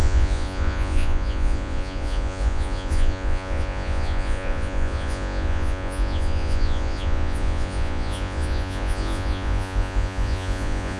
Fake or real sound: fake